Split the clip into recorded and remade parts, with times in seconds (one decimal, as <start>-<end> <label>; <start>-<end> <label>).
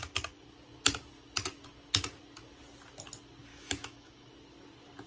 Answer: 0.0-3.5 recorded; 3.5-4.3 remade; 4.3-5.1 recorded